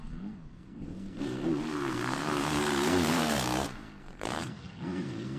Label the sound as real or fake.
fake